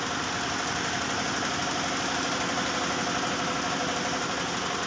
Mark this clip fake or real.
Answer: real